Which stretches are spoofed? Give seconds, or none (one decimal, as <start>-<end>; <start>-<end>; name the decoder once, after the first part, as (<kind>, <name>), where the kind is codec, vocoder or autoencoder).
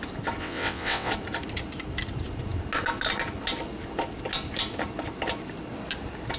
0.4-1.1 (vocoder, WaveNeXt)